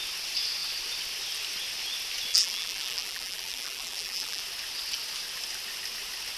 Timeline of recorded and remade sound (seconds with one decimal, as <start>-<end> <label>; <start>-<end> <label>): 0.0-2.3 recorded; 2.3-4.4 remade; 4.4-6.4 recorded